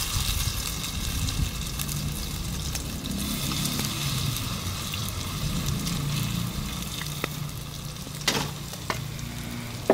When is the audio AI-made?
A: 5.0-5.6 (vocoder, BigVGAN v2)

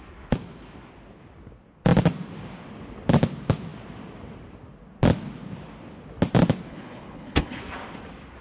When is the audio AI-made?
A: 6.7-7.6 (codec, HILCodec)

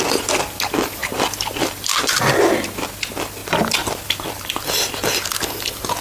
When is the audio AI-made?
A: 1.0-2.3 (vocoder, BigVGAN v2)